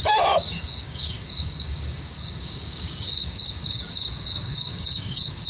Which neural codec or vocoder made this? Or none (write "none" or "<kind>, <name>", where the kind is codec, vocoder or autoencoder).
codec, DAC